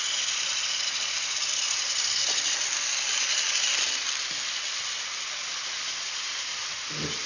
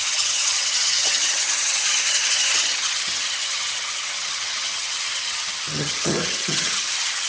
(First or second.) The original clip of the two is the first